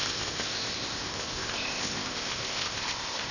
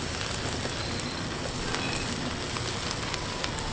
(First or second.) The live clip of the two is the second